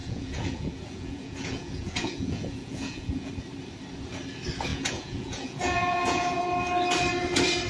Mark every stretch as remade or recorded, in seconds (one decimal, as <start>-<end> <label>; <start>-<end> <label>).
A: 0.0-3.3 remade; 3.3-4.7 recorded; 4.7-6.4 remade; 6.4-7.7 recorded